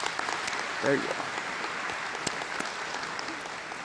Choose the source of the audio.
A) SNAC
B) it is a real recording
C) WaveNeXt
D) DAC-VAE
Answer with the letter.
B